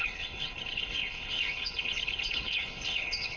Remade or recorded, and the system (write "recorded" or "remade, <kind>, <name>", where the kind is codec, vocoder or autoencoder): remade, codec, HILCodec